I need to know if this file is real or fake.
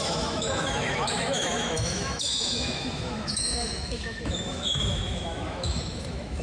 fake